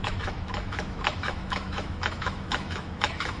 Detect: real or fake fake